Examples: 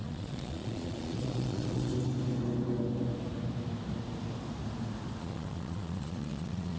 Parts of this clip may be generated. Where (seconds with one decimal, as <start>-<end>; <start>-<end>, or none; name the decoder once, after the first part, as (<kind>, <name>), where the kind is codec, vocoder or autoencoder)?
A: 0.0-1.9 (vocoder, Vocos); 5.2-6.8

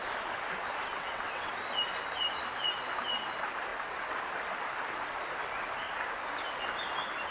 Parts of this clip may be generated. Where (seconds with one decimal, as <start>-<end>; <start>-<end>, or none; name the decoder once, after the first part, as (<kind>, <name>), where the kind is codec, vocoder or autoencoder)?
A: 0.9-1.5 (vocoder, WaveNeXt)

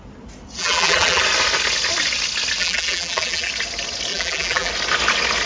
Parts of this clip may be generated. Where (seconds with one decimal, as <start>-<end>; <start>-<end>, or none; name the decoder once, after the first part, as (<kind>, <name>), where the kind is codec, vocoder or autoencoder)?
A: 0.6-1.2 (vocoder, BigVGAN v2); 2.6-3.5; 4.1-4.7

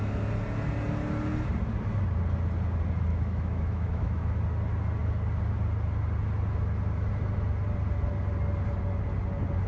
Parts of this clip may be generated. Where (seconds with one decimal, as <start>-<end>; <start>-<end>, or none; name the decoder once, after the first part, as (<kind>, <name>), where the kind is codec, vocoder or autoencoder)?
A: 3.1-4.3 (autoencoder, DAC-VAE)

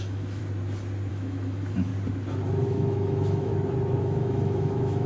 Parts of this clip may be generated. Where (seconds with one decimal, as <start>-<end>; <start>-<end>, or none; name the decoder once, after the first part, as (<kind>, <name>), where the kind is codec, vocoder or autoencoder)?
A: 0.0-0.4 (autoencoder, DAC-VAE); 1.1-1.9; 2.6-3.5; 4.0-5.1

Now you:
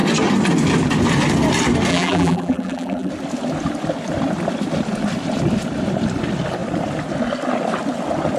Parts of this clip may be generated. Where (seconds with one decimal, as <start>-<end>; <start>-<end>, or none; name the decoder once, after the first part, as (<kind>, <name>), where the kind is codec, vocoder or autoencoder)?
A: 1.9-3.1 (vocoder, BigVGAN v2)

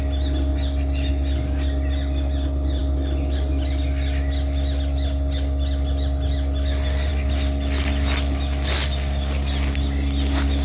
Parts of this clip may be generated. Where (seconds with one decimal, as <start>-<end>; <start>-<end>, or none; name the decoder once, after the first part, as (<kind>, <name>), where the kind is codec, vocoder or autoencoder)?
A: none

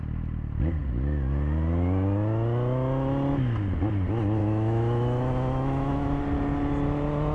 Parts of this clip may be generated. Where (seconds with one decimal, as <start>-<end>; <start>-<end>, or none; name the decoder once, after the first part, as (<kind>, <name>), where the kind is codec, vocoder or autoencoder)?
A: 4.4-6.2 (autoencoder, DAC-VAE)